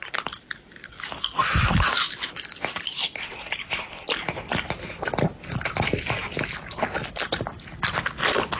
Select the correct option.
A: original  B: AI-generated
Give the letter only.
A